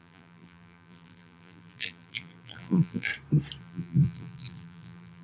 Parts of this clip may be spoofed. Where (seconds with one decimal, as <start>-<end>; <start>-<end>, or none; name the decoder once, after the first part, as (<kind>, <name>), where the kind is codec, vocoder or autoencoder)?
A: 0.0-3.1 (vocoder, BigVGAN v2); 3.6-5.2